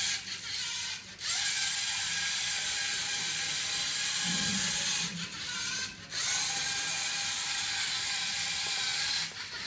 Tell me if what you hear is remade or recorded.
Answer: recorded